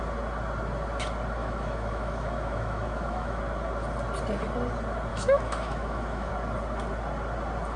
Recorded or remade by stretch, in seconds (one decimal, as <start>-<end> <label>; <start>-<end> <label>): 0.0-1.4 recorded; 1.4-3.4 remade; 3.4-5.1 recorded; 5.1-6.3 remade; 6.3-7.8 recorded